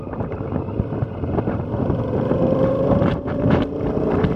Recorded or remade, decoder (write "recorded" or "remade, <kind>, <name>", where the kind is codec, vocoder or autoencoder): remade, vocoder, BigVGAN v2